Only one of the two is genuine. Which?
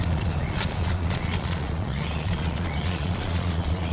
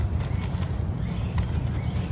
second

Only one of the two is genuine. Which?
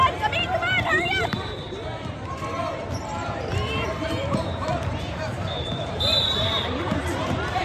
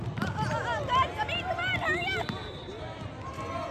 second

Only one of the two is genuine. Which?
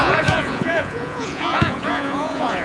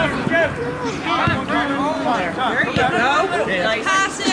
second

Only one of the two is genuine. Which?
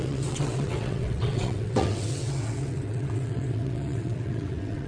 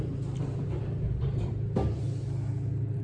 second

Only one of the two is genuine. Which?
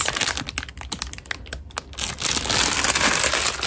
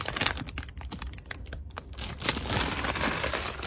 first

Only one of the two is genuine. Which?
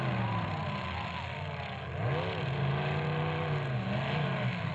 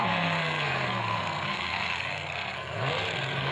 first